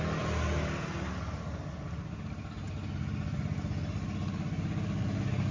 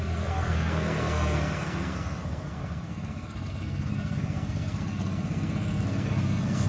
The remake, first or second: second